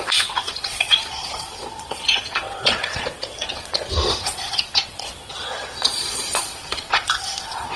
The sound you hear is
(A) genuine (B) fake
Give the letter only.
B